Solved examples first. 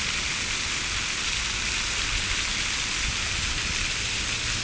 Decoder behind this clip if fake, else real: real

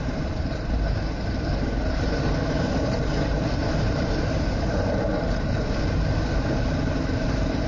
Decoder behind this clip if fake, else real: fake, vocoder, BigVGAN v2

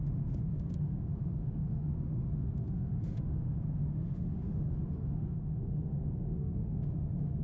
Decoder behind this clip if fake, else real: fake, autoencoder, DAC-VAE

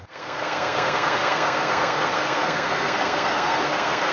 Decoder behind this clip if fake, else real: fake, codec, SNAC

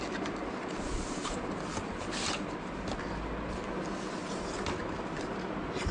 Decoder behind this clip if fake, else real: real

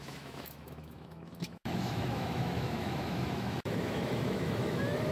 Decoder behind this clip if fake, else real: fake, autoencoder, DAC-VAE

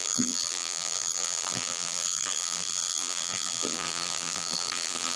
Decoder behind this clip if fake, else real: fake, vocoder, BigVGAN v2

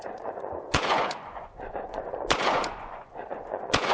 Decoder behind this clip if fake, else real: fake, vocoder, Vocos